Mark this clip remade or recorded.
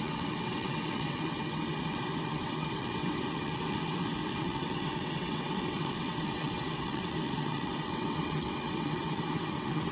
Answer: remade